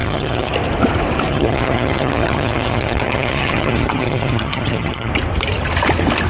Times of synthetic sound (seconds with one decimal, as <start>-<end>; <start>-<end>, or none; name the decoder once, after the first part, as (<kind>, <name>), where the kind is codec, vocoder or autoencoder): 0.0-0.5 (vocoder, HiFi-GAN); 1.3-5.1